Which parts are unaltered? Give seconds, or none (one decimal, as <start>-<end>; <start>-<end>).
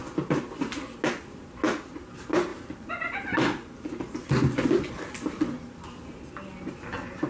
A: 0.0-7.3